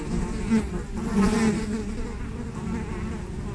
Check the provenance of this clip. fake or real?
real